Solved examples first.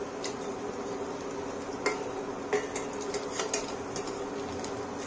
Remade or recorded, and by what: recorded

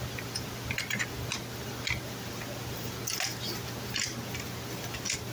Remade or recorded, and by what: recorded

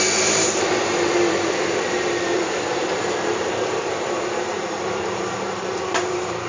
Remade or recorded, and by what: remade, vocoder, BigVGAN v2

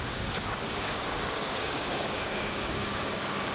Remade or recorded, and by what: remade, codec, DAC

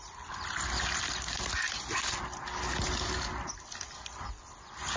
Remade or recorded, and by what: recorded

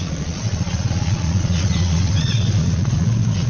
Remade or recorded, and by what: remade, vocoder, Vocos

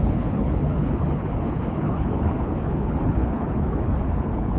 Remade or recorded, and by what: remade, codec, HILCodec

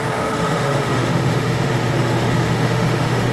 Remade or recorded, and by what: remade, autoencoder, DAC-VAE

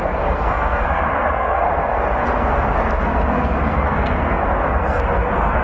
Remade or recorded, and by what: remade, codec, SNAC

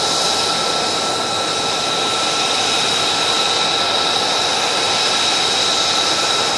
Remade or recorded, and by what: recorded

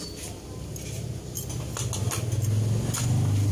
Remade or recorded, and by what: recorded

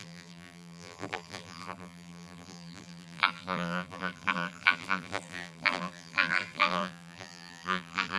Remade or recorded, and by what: remade, vocoder, BigVGAN v2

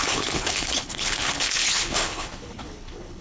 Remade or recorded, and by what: remade, codec, HILCodec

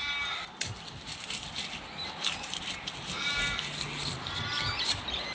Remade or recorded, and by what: recorded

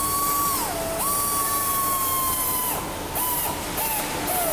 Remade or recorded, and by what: recorded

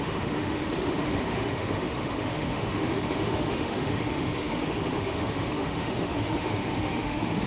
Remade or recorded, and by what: remade, autoencoder, DAC-VAE